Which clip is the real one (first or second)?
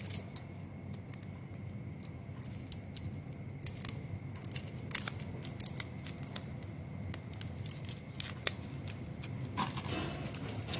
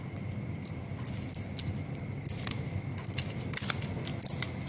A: first